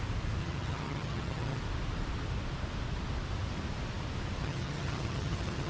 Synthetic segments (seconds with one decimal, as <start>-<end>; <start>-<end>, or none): 0.4-1.6; 4.4-5.7